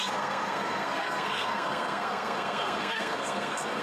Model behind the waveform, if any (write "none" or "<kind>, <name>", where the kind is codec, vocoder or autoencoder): codec, SNAC